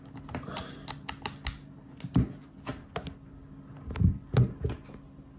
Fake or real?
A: real